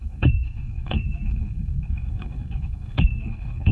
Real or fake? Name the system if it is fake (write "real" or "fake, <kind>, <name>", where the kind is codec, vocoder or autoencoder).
fake, codec, SNAC